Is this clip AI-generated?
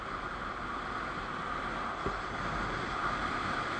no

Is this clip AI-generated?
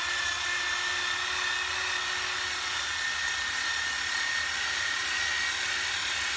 no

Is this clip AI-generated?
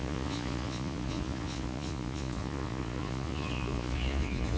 yes